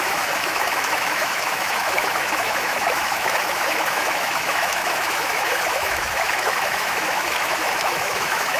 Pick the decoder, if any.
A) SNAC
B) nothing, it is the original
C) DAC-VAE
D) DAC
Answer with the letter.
C